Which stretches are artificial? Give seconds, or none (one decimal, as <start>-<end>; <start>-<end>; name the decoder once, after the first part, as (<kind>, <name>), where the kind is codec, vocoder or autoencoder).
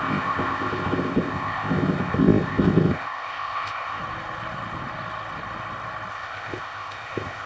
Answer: 0.0-4.0 (codec, ZipCodec); 6.1-7.5